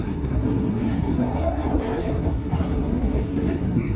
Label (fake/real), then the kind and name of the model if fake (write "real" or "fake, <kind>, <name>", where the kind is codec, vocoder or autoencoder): fake, codec, SNAC